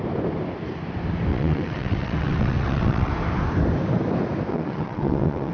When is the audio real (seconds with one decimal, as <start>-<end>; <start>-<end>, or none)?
0.0-1.3; 3.1-4.5